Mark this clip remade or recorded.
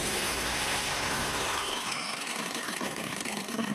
remade